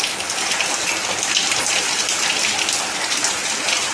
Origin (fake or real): real